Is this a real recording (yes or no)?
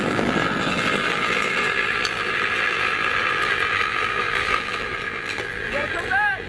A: no